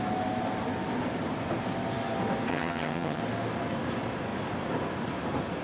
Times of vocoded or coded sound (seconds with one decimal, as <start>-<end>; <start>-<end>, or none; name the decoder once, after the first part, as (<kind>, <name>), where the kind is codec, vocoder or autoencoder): 2.5-3.2 (vocoder, HiFi-GAN)